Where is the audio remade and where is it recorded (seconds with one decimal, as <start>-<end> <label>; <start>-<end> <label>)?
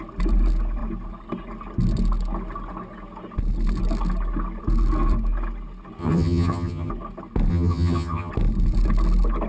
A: 0.0-6.0 recorded; 6.0-6.9 remade; 6.9-7.5 recorded; 7.5-8.3 remade; 8.3-9.5 recorded